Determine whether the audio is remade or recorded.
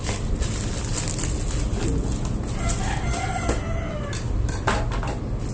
recorded